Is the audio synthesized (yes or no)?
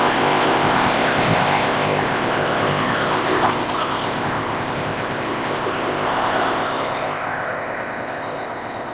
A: yes